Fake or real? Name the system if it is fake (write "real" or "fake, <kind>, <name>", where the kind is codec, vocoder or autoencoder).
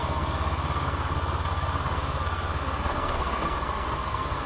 fake, codec, SNAC